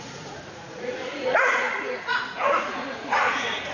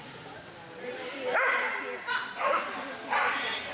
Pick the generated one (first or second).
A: first